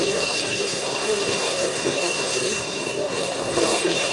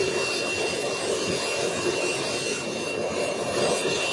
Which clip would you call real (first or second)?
second